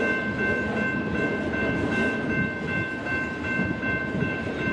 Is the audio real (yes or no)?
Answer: yes